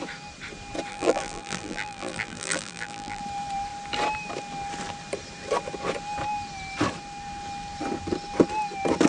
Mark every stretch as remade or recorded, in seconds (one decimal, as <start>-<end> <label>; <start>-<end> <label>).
0.0-0.9 recorded; 0.9-3.2 remade; 3.2-9.1 recorded